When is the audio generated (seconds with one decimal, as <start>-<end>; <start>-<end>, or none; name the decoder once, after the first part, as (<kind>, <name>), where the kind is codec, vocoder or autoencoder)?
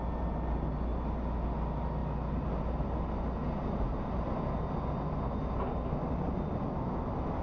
none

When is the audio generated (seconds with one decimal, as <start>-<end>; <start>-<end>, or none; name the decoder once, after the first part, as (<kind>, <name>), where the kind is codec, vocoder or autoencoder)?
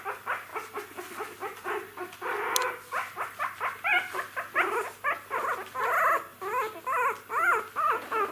none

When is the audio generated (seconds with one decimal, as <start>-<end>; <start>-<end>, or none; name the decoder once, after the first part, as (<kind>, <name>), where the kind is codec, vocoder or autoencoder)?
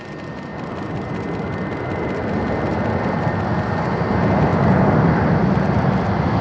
none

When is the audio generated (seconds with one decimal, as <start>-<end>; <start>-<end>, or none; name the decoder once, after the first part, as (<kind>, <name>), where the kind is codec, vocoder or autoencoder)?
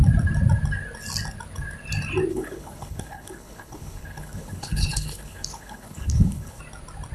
2.3-6.6 (codec, HILCodec)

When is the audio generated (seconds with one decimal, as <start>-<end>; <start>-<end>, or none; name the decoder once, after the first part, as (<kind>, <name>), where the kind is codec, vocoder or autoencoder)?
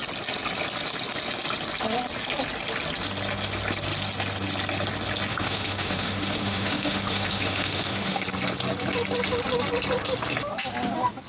5.3-8.2 (autoencoder, DAC-VAE)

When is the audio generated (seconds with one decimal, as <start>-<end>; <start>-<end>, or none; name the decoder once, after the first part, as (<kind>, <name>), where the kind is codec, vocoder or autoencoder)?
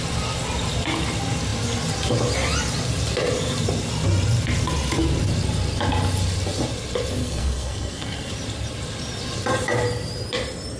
7.2-8.3 (codec, SNAC)